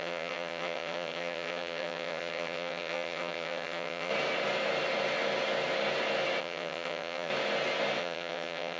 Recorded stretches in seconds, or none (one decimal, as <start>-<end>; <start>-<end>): 4.1-6.4; 7.3-8.0